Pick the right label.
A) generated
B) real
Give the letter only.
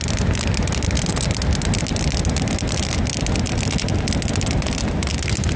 B